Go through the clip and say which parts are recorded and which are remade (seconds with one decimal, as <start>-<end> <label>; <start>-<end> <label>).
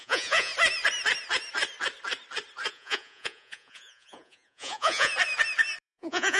0.0-0.5 remade; 0.5-2.7 recorded; 2.7-5.1 remade; 5.1-5.8 recorded; 5.8-6.4 remade